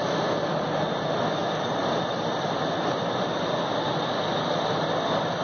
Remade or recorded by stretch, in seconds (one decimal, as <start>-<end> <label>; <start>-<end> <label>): 0.0-1.4 recorded; 1.4-3.3 remade; 3.3-5.4 recorded